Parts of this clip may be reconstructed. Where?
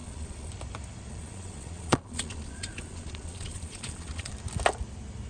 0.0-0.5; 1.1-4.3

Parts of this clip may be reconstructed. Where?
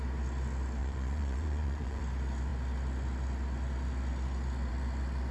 0.8-2.0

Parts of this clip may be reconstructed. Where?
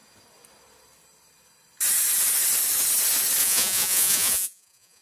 3.4-5.0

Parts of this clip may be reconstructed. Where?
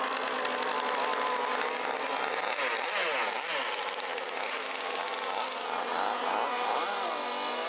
none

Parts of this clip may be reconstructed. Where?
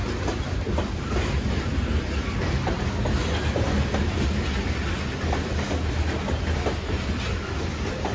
none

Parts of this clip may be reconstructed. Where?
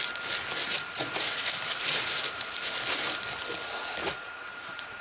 0.6-2.7; 4.0-5.0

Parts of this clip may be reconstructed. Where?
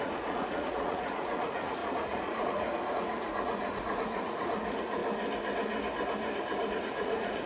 0.0-5.0; 6.7-7.5